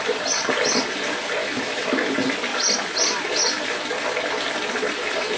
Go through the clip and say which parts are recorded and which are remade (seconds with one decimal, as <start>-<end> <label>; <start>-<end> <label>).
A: 0.0-1.4 recorded; 1.4-2.1 remade; 2.1-5.4 recorded